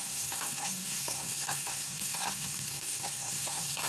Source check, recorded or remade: remade